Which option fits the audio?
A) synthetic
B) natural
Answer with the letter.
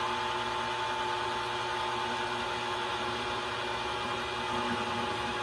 B